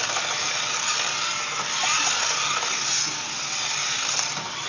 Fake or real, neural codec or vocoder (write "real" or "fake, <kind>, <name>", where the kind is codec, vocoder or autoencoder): real